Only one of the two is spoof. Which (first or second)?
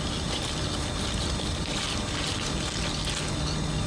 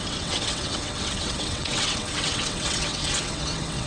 second